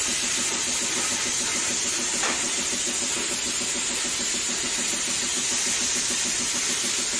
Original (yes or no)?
yes